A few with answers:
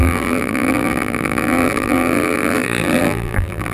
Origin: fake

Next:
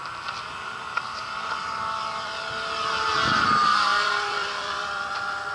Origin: fake